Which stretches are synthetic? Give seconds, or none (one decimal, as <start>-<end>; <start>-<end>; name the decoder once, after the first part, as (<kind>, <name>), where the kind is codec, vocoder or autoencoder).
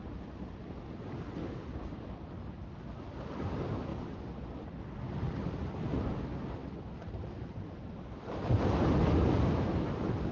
1.4-2.0 (codec, DAC)